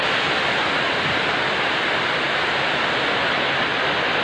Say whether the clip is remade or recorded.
recorded